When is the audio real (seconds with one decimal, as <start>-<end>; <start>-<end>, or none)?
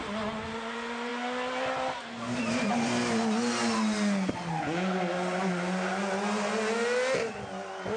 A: 0.0-8.0